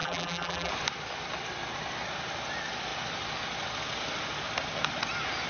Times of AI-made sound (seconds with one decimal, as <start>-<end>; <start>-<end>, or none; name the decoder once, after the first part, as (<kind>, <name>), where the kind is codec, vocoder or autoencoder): 0.0-0.7 (vocoder, BigVGAN v2)